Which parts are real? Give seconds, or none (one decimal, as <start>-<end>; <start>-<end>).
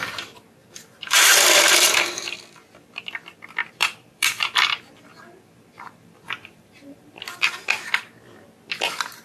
0.0-0.6; 2.4-3.6; 7.1-9.2